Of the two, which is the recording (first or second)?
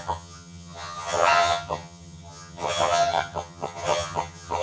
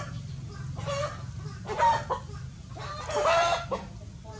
second